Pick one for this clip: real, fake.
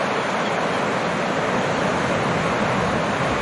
real